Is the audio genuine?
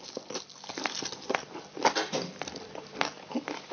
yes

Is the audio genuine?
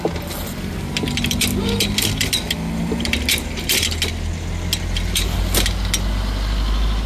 yes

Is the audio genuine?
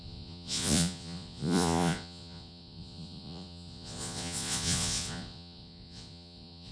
no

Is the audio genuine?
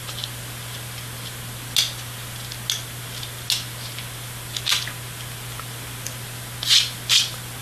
yes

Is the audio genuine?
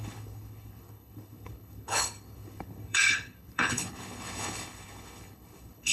no